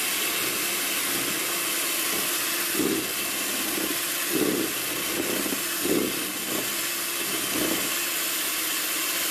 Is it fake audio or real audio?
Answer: real